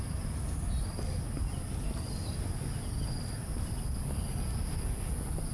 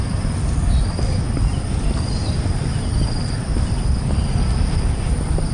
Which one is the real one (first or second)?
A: first